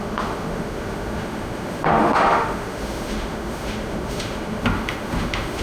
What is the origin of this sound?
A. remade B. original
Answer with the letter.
A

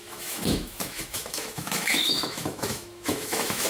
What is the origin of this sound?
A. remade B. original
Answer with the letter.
A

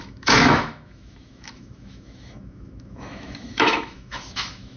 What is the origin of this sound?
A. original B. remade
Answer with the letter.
B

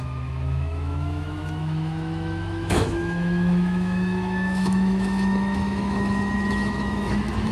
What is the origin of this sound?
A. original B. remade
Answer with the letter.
B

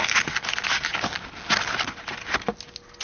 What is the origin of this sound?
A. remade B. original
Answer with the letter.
B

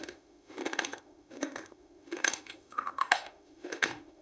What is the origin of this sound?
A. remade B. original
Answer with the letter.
A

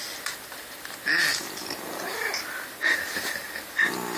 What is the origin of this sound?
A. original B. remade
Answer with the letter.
A